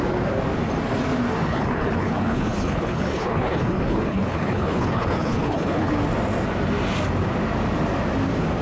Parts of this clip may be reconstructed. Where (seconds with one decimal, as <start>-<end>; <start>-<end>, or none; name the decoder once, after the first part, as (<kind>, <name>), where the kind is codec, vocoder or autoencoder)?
1.5-5.9 (codec, HILCodec)